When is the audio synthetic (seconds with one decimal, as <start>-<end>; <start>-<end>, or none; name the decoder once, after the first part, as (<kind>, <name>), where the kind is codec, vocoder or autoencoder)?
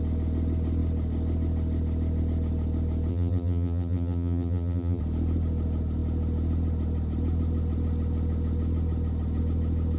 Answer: 3.1-5.0 (vocoder, BigVGAN v2)